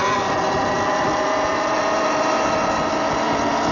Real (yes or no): yes